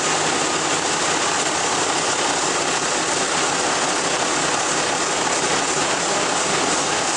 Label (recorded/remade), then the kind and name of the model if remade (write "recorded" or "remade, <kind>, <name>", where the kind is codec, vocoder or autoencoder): recorded